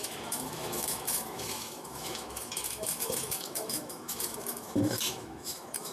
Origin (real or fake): fake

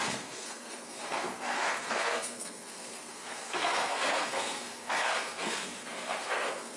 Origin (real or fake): fake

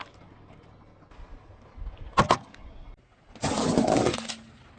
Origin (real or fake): real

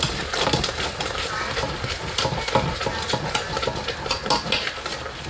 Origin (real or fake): real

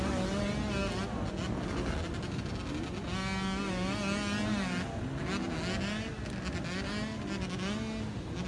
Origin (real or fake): real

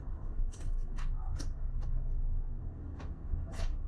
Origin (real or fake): fake